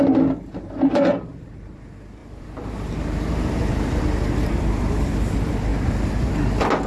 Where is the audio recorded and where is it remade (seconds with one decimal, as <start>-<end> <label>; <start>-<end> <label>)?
0.0-0.9 recorded; 0.9-1.7 remade; 1.7-2.2 recorded; 2.2-4.0 remade; 4.0-6.9 recorded